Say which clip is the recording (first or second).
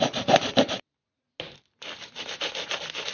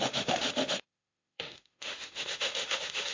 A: first